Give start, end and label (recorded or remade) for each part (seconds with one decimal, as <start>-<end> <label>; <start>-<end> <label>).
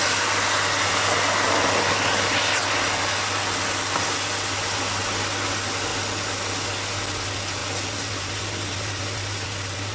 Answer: 0.0-9.9 recorded